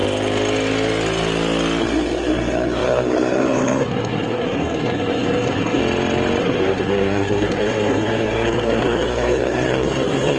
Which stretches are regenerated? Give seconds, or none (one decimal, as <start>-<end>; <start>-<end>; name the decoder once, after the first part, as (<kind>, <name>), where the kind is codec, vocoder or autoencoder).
1.8-5.8 (codec, SNAC); 6.4-10.4